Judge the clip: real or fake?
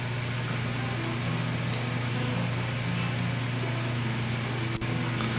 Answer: real